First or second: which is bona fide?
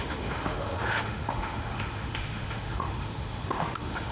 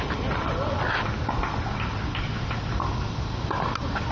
second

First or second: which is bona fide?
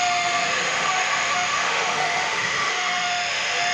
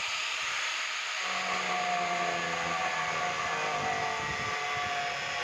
second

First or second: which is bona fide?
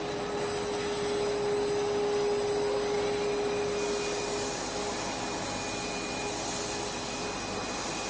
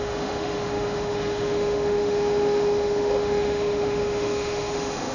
first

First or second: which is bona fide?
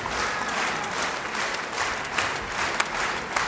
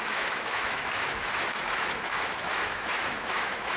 first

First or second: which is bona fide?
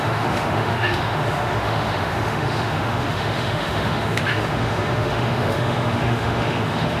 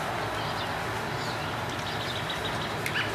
second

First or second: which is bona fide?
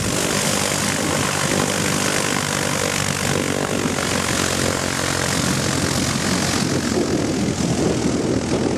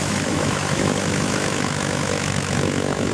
first